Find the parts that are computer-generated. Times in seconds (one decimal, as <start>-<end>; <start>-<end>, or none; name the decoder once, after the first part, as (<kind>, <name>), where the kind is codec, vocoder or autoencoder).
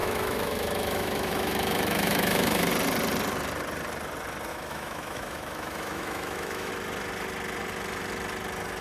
0.0-2.7 (autoencoder, DAC-VAE); 4.5-6.7